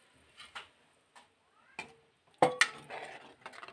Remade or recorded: recorded